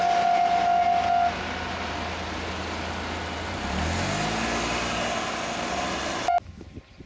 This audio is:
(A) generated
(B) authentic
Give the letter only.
B